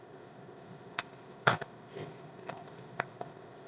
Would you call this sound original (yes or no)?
no